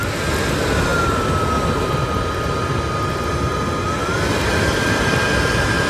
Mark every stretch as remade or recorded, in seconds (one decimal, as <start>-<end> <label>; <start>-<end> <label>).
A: 0.0-5.9 recorded